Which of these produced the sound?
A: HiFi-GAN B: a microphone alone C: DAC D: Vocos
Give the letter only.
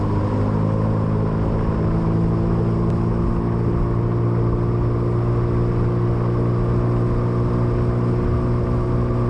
B